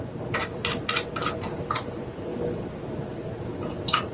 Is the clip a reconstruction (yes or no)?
no